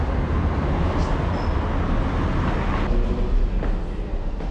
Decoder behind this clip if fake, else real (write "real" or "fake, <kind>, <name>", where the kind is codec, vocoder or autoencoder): real